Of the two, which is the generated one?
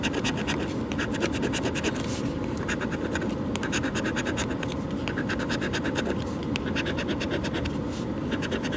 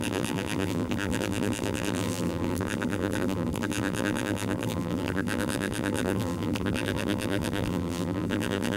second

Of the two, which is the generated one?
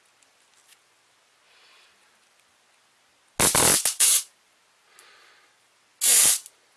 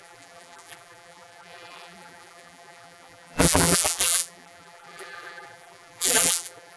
second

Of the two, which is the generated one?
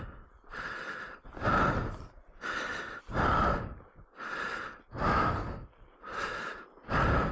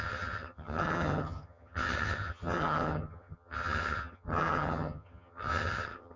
second